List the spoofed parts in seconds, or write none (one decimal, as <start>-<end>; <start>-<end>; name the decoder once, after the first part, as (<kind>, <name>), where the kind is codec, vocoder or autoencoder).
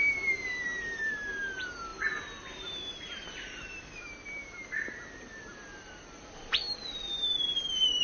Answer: 1.9-4.0 (vocoder, BigVGAN v2)